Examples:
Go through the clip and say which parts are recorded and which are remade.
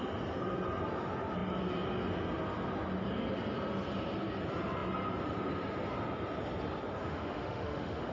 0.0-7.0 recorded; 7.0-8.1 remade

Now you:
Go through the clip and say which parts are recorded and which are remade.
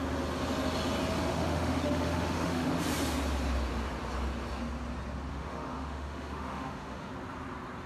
0.0-1.3 recorded; 1.3-2.7 remade; 2.7-5.3 recorded; 5.3-7.1 remade; 7.1-7.9 recorded